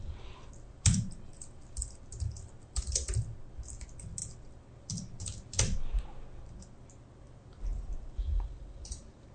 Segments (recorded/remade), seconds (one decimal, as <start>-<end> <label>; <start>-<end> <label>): 0.0-9.3 recorded